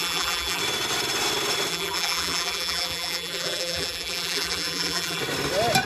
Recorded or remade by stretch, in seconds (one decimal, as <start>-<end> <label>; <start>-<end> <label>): 0.0-0.6 remade; 0.6-1.7 recorded; 1.7-5.2 remade; 5.2-5.9 recorded